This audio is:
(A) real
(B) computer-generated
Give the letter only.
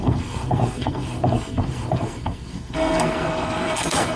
B